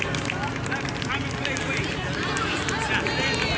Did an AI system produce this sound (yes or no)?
no